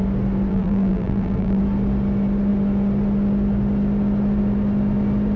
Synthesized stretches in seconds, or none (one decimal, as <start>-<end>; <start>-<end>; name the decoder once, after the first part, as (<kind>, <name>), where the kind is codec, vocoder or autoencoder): 0.5-1.6 (vocoder, BigVGAN v2)